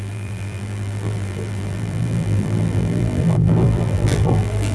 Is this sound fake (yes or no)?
yes